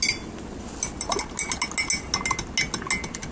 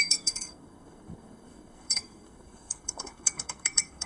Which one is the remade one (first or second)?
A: second